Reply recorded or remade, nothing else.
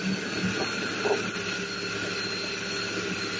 recorded